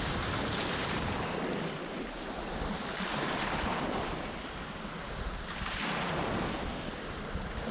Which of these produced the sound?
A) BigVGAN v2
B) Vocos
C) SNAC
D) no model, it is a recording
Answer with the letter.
D